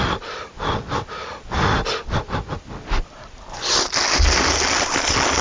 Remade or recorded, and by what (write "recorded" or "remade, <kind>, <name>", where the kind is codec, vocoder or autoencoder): recorded